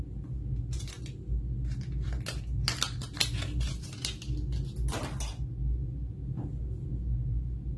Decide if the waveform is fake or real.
real